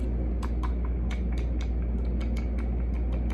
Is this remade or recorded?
recorded